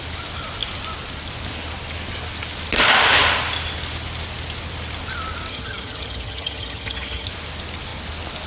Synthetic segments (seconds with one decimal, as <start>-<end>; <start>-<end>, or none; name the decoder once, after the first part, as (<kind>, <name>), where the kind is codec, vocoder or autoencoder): 5.5-7.3 (vocoder, HiFi-GAN)